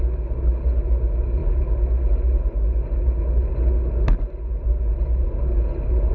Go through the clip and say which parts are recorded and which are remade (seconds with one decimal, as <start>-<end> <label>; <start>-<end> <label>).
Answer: 0.0-6.1 recorded